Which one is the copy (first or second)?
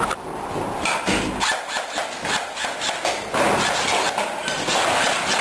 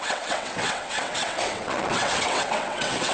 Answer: second